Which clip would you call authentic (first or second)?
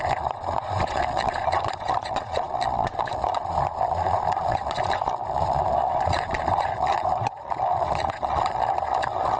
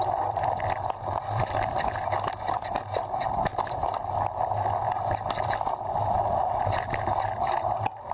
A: second